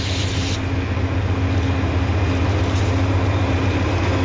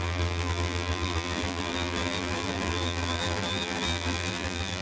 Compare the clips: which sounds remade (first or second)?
second